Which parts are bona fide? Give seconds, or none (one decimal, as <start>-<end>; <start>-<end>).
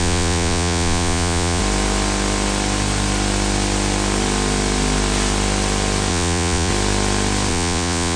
1.6-6.1; 6.7-7.5